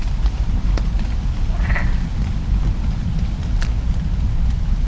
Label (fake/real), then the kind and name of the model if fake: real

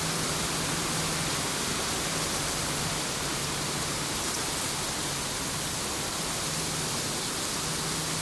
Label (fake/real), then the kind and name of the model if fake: real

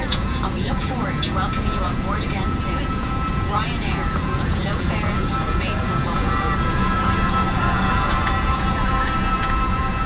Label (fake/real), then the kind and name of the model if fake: fake, vocoder, Vocos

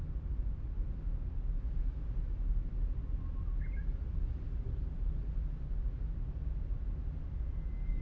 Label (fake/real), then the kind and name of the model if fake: real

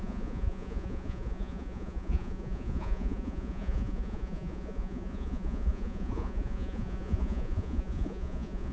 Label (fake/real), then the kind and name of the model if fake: fake, vocoder, Vocos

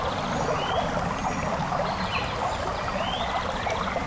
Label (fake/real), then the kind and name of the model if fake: real